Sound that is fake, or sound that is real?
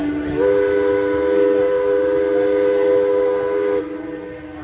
real